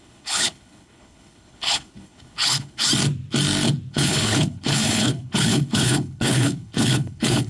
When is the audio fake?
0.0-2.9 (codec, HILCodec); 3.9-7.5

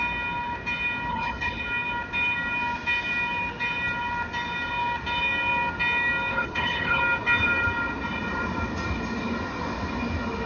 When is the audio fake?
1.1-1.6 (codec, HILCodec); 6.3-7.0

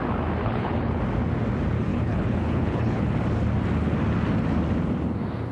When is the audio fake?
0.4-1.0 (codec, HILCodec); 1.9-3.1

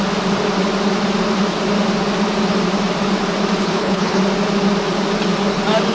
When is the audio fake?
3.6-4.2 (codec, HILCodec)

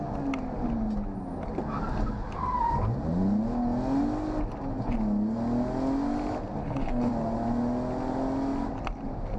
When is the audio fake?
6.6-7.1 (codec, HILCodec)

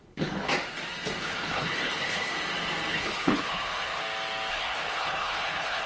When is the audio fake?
0.0-0.5 (codec, HILCodec); 1.2-2.3; 2.9-4.0; 4.5-5.9